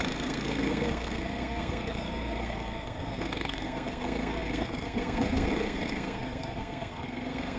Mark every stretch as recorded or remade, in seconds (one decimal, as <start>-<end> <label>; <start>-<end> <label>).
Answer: 0.0-7.6 remade